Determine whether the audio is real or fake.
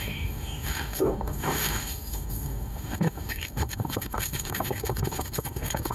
fake